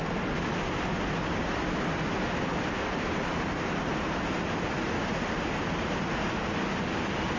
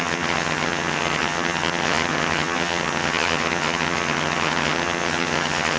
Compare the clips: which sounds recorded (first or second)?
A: first